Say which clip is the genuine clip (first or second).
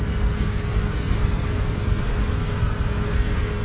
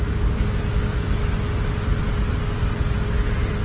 second